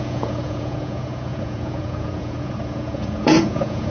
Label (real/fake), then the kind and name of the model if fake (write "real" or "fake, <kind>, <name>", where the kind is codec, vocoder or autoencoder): fake, vocoder, Vocos